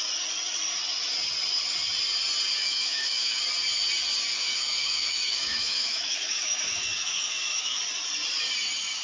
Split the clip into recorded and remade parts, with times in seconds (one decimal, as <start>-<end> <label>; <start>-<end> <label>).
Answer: 0.0-2.6 recorded; 2.6-3.4 remade; 3.4-4.3 recorded; 4.3-7.8 remade; 7.8-9.0 recorded